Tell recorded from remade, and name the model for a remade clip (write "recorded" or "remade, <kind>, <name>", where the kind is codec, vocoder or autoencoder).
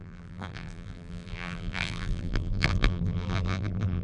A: remade, vocoder, BigVGAN v2